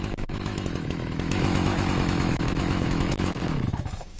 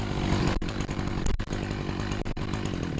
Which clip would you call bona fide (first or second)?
second